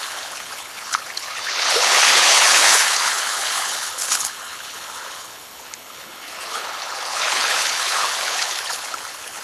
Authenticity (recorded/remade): remade